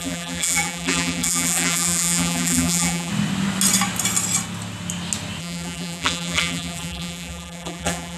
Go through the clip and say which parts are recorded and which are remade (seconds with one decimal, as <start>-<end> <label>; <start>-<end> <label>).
0.0-3.1 remade; 3.1-5.4 recorded; 5.4-8.2 remade